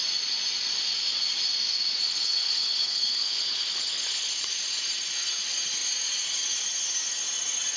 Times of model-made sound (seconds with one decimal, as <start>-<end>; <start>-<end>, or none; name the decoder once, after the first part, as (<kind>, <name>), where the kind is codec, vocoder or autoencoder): 2.0-4.3 (codec, HILCodec)